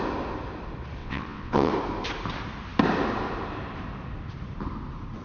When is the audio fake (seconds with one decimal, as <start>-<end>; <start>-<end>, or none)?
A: 1.0-1.7